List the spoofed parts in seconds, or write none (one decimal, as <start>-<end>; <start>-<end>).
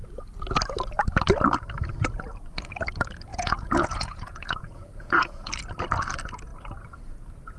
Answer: 3.3-5.5